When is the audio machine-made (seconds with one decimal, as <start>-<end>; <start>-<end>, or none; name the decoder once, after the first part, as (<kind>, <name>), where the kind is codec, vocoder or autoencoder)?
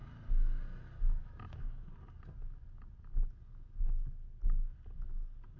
1.2-1.9 (autoencoder, DAC-VAE)